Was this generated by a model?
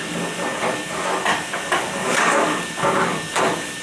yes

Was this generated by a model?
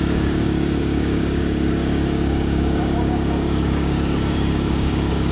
yes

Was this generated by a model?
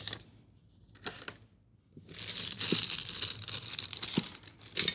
no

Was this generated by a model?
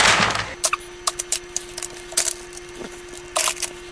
no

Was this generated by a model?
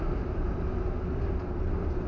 no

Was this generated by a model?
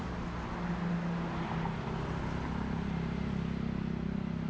no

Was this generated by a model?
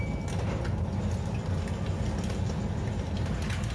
no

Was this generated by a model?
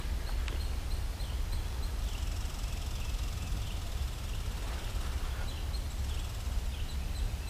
no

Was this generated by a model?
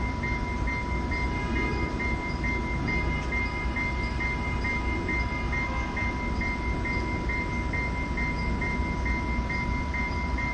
no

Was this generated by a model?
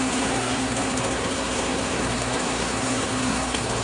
yes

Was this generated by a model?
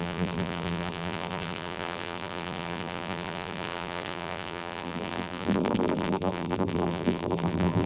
yes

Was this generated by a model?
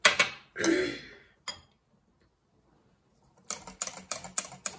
no